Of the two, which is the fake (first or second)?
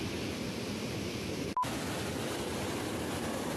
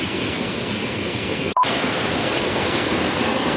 second